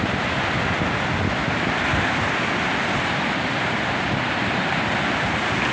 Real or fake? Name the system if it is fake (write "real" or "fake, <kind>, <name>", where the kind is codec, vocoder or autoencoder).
real